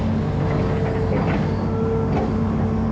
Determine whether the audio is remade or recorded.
recorded